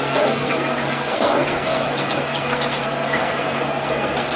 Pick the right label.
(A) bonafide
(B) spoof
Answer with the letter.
B